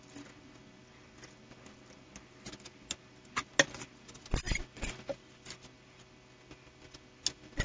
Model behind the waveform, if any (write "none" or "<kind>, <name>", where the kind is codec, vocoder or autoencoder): none